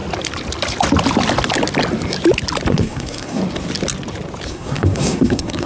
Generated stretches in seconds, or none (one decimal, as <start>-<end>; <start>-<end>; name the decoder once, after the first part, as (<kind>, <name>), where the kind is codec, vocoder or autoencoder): 2.7-3.4 (codec, SNAC); 4.5-5.7